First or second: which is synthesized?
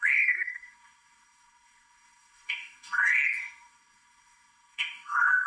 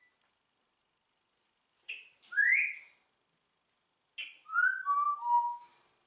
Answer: first